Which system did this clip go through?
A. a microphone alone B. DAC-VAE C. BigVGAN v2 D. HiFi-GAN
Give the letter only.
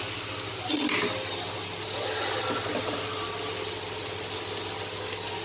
A